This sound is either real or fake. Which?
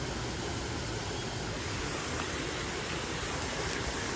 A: real